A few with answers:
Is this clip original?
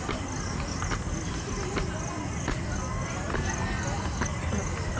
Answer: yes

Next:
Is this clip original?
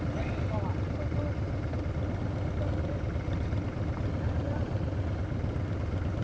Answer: yes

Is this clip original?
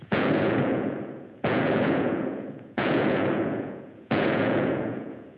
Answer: no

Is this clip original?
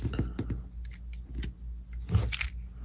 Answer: yes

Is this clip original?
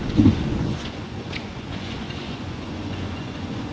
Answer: no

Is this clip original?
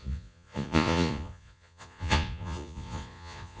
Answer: no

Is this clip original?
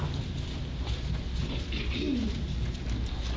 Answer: yes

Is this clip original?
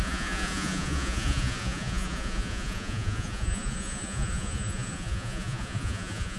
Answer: no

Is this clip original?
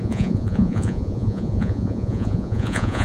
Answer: no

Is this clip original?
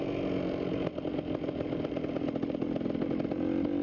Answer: yes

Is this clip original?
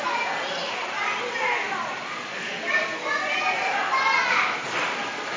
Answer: yes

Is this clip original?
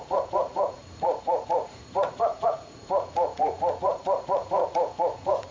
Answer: no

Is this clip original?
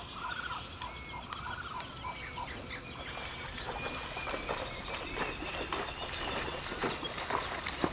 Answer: yes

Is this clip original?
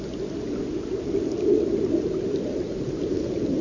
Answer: yes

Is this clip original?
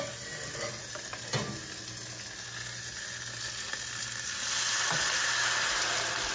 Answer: yes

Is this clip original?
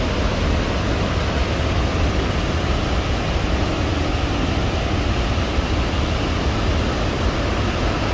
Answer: yes